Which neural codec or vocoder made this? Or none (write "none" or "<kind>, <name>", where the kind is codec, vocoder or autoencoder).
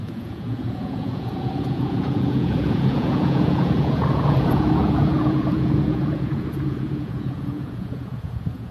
vocoder, Vocos